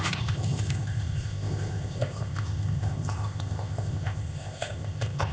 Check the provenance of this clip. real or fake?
fake